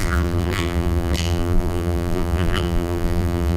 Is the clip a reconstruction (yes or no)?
yes